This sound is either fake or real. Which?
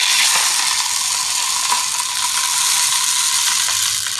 real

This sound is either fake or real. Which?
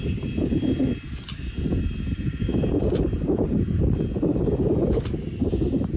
real